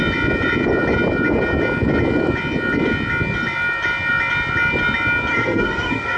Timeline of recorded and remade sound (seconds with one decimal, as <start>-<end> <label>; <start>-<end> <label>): 0.0-5.3 recorded; 5.3-6.2 remade